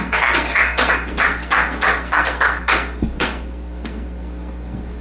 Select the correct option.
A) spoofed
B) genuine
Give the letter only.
A